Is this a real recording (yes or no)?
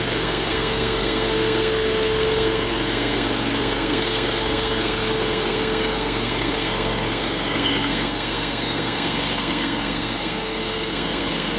no